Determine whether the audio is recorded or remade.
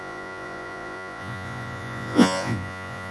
remade